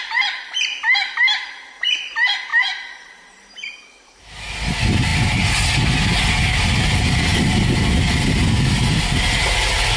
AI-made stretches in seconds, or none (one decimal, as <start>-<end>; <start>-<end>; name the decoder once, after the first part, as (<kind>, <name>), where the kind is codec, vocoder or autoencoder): 2.5-3.7 (vocoder, BigVGAN v2)